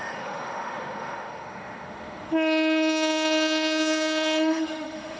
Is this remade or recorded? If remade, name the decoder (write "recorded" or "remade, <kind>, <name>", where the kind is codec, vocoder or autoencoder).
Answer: remade, autoencoder, DAC-VAE